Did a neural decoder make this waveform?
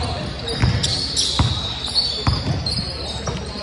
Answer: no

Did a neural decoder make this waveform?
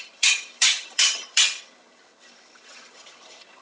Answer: yes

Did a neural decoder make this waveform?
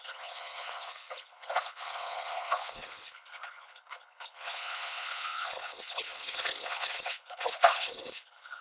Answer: yes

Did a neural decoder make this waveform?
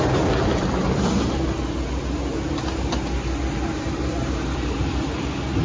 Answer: no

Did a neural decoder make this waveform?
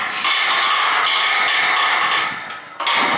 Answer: no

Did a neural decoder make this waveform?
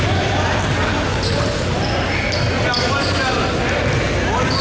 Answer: no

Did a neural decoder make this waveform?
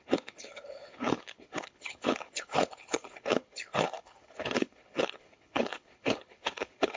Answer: yes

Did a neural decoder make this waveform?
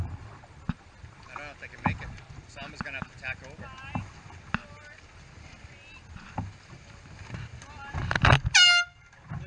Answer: no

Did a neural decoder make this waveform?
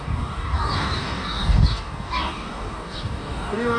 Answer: yes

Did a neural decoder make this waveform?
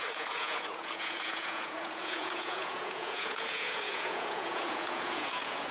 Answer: yes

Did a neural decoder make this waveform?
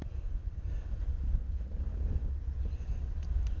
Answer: no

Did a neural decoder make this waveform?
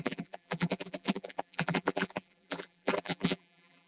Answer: yes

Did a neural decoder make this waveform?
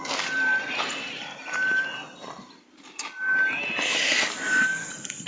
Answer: no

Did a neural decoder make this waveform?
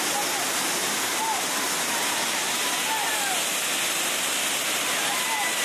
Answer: no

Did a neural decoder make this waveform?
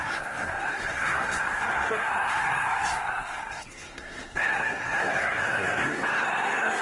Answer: yes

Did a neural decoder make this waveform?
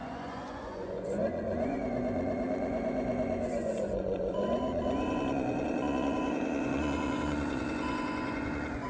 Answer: yes